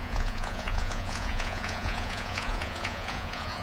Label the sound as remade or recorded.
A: remade